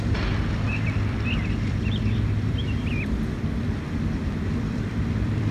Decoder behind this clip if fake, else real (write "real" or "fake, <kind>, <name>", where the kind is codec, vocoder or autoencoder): fake, vocoder, BigVGAN v2